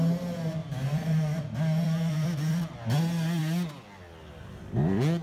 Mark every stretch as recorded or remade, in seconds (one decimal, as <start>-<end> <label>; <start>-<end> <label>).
0.0-0.6 recorded; 0.6-2.5 remade; 2.5-5.2 recorded